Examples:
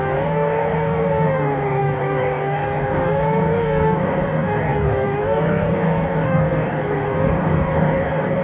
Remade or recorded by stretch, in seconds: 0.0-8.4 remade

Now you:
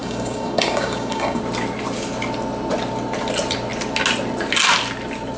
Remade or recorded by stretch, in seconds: 0.0-1.4 remade; 1.4-5.4 recorded

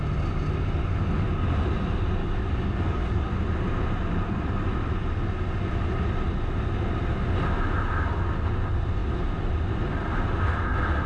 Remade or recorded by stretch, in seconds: 0.0-2.2 recorded; 2.2-3.3 remade; 3.3-11.1 recorded

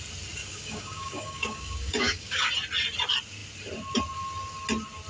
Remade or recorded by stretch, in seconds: 0.0-0.4 recorded; 0.4-2.5 remade; 2.5-5.1 recorded

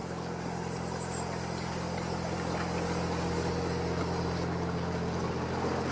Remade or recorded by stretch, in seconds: 0.0-5.9 recorded

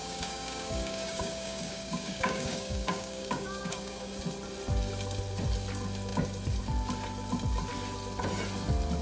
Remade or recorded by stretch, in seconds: 0.0-4.2 remade; 4.2-9.0 recorded